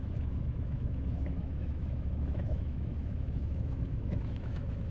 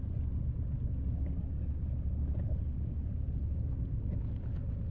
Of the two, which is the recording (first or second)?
second